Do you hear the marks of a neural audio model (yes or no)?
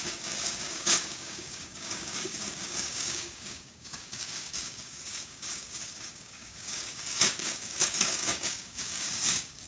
yes